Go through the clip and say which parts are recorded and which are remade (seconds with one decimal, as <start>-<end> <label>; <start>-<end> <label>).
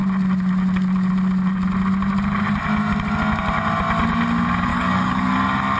0.0-4.7 recorded; 4.7-5.3 remade; 5.3-5.8 recorded